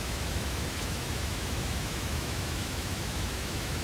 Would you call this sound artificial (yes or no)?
yes